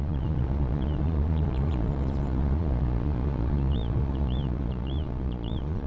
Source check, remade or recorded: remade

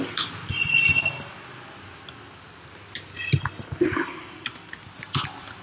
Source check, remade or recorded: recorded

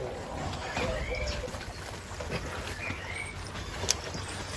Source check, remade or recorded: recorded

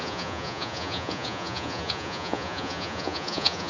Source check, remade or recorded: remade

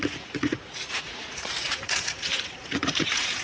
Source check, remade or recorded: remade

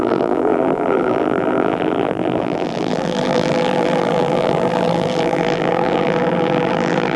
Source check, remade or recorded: remade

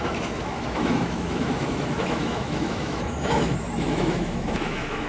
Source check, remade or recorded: remade